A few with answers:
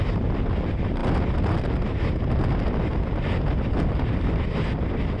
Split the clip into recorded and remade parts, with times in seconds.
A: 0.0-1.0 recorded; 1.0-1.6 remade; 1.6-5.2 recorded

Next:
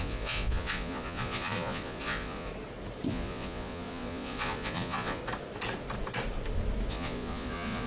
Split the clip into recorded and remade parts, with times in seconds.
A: 0.0-2.5 remade; 2.5-3.1 recorded; 3.1-5.2 remade; 5.2-6.9 recorded; 6.9-7.9 remade

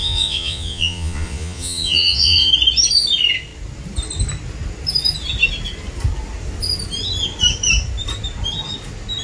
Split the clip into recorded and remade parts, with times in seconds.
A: 0.0-2.5 remade; 2.5-9.2 recorded

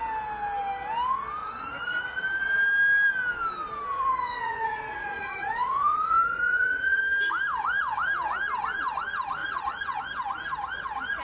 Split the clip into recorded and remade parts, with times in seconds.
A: 0.0-1.4 recorded; 1.4-2.2 remade; 2.2-3.9 recorded; 3.9-7.0 remade; 7.0-9.4 recorded; 9.4-10.0 remade; 10.0-11.2 recorded

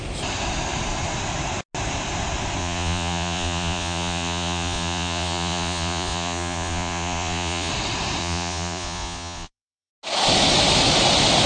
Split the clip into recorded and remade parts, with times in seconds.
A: 0.0-2.6 recorded; 2.6-7.7 remade; 7.7-8.2 recorded; 8.2-9.9 remade; 9.9-11.5 recorded

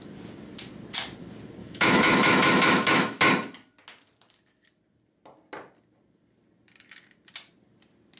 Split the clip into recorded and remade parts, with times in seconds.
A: 0.0-1.6 recorded; 1.6-3.2 remade; 3.2-8.2 recorded

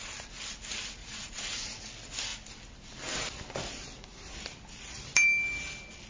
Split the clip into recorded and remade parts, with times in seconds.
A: 0.0-1.0 recorded; 1.0-1.8 remade; 1.8-6.1 recorded